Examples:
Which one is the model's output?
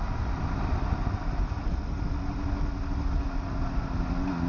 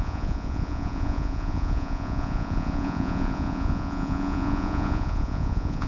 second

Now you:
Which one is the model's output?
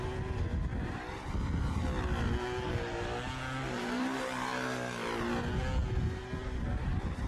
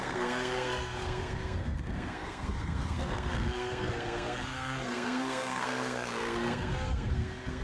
second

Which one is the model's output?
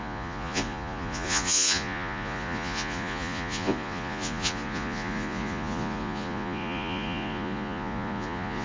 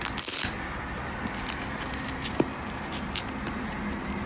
first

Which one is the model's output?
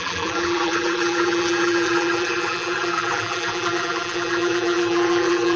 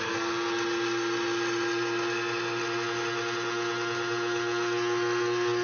first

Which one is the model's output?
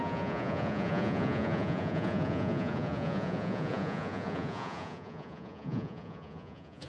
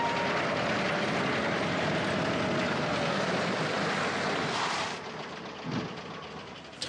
first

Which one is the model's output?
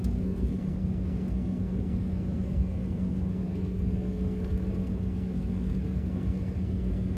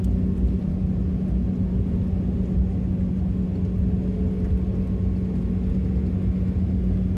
first